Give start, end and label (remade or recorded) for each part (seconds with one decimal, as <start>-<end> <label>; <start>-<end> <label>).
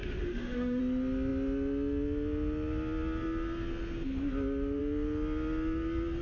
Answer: 0.0-0.8 remade; 0.8-6.2 recorded